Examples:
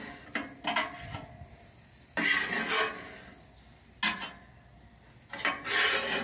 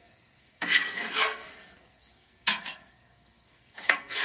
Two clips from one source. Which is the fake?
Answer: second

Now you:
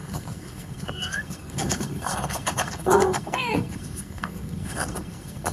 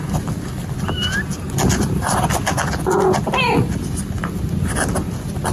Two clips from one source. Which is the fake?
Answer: first